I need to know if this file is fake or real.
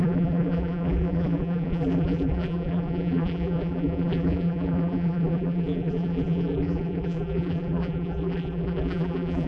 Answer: fake